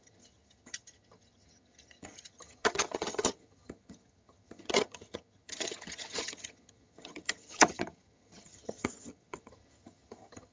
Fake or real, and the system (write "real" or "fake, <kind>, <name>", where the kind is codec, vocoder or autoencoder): fake, vocoder, HiFi-GAN